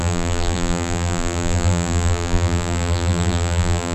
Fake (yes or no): yes